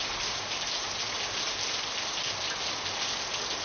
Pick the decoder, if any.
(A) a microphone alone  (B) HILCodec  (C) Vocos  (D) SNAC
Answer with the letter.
A